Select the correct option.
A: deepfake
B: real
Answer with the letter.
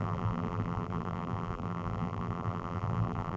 A